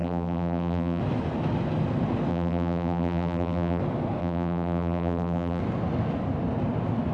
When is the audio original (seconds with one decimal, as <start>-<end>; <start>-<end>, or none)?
1.0-2.3; 3.8-4.2; 5.6-7.1